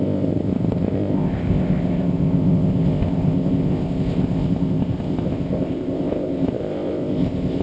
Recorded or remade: remade